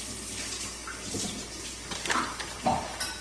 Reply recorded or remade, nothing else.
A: recorded